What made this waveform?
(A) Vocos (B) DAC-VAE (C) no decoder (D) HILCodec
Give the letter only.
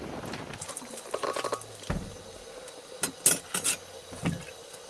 C